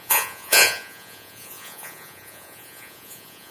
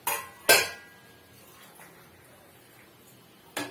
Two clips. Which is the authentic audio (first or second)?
second